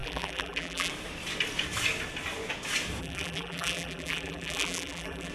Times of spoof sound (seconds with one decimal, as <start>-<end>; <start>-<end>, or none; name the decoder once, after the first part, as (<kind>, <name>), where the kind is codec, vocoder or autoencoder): 0.0-0.9 (vocoder, BigVGAN v2); 3.0-5.3

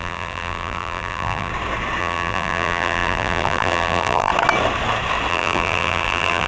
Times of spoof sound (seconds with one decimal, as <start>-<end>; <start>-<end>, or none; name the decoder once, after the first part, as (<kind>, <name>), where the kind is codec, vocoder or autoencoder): 0.0-1.5 (vocoder, BigVGAN v2); 2.0-4.3; 5.3-6.5

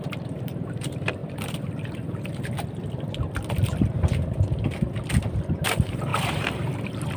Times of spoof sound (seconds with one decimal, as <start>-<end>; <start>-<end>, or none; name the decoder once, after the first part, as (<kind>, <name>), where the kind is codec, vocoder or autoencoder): 0.0-1.2 (vocoder, BigVGAN v2); 5.5-7.2

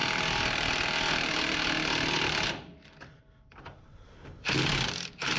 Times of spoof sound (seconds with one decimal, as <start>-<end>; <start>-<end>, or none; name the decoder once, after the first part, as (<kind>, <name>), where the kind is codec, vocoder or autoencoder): 0.0-3.2 (vocoder, BigVGAN v2)

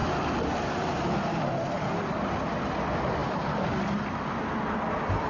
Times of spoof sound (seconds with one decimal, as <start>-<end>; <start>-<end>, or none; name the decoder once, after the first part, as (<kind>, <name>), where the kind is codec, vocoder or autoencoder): 0.0-2.3 (vocoder, BigVGAN v2); 3.2-4.0